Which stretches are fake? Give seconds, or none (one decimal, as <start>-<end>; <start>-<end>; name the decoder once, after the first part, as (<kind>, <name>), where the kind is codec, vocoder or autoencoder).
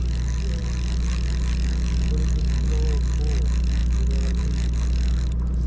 none